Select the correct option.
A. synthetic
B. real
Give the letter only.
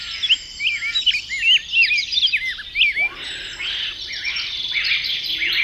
B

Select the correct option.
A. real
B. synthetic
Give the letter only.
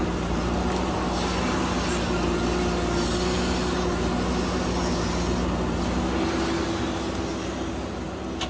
A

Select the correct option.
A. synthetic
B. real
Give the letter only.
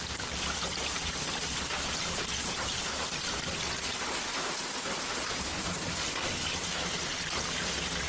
B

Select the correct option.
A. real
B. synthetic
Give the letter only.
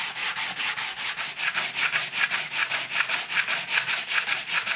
A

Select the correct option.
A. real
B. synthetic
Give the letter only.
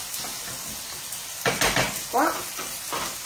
A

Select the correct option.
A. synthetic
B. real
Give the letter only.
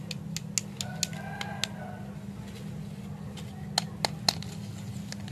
B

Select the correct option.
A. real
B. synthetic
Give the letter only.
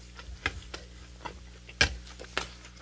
A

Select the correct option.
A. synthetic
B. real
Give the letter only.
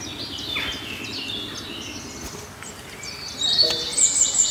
B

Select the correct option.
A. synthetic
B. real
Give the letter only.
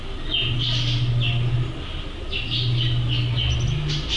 B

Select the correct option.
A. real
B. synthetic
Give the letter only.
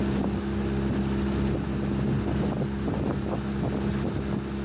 A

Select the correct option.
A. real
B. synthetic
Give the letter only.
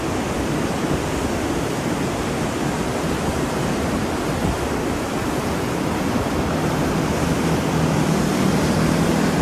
A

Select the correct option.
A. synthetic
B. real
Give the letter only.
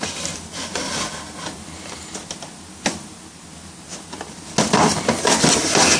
B